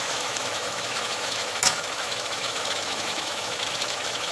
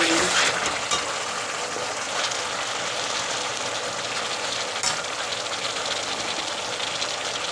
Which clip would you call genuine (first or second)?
second